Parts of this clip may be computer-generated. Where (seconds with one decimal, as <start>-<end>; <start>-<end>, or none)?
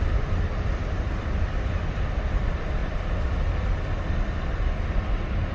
0.0-2.8; 4.0-5.5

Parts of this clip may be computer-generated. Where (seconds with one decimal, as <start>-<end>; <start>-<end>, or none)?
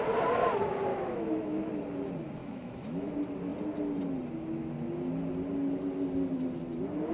0.9-1.7; 2.4-3.1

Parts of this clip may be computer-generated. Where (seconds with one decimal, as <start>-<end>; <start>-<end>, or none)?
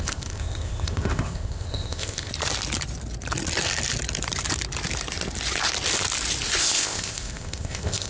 0.0-2.3; 6.6-8.1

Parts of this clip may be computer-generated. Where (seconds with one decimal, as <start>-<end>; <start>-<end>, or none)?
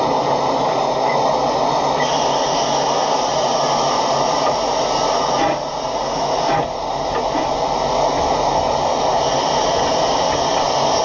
none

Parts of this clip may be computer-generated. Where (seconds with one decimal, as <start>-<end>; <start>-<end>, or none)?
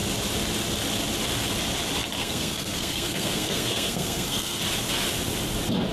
2.2-4.6